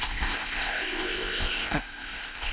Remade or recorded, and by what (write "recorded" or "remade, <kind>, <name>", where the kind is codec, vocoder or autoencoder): remade, codec, ZipCodec